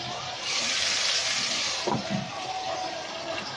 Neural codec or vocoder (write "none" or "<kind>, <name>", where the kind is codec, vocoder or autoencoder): vocoder, BigVGAN v2